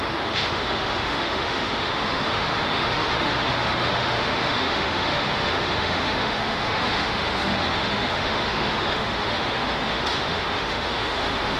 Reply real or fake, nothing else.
fake